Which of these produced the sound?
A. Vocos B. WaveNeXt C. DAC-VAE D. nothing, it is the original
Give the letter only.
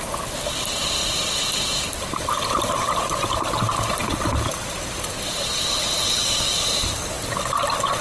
D